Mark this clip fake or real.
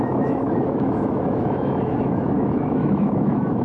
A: fake